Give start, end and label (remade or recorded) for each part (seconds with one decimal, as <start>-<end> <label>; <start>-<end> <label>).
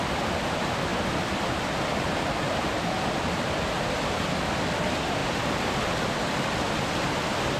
0.0-5.2 recorded; 5.2-7.0 remade; 7.0-7.6 recorded